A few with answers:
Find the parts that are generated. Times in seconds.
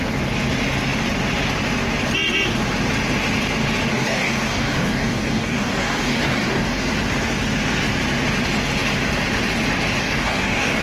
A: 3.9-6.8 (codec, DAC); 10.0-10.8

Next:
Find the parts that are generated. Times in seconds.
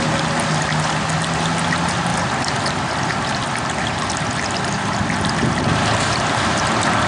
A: none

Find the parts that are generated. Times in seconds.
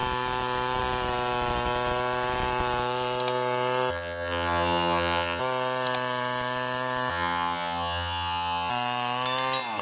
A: 3.9-5.4 (vocoder, HiFi-GAN); 7.1-8.7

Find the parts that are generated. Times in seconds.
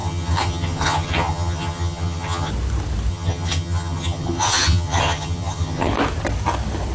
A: 0.0-2.5 (vocoder, HiFi-GAN); 3.1-5.9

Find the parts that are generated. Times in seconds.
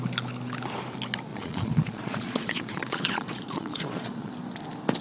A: 1.3-4.3 (vocoder, Vocos)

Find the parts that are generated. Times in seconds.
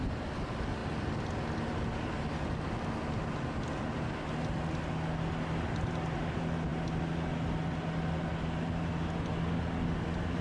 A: none